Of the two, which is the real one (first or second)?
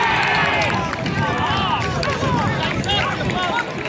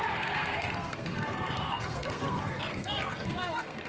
first